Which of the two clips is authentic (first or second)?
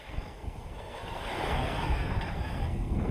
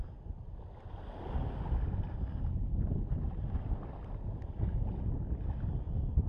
second